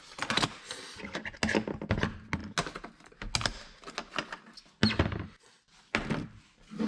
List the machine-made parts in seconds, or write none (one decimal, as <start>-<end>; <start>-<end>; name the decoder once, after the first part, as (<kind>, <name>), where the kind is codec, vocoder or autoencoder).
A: none